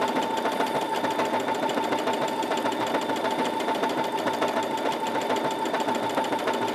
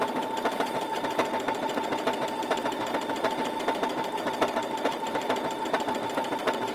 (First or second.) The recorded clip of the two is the first